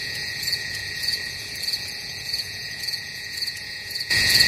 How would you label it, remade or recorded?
remade